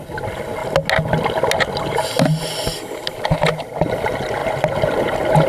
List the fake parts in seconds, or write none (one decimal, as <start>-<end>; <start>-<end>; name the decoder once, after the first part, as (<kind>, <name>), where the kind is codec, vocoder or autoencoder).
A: none